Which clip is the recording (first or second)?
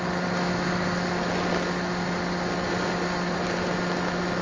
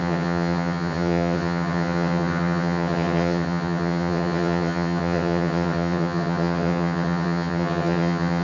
first